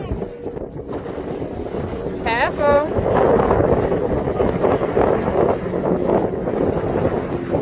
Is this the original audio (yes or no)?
yes